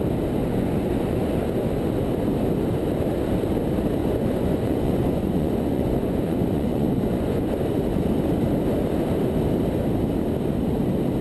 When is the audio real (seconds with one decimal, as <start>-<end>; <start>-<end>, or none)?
0.0-0.4; 1.3-4.0; 7.5-11.2